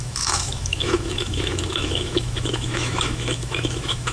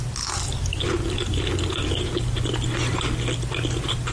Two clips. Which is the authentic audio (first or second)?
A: second